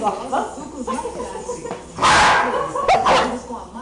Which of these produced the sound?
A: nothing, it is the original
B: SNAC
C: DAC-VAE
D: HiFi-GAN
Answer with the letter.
A